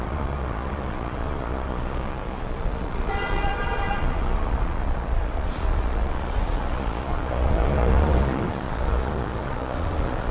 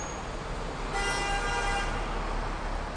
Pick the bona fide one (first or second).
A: second